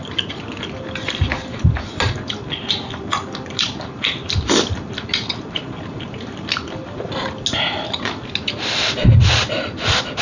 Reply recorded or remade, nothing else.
recorded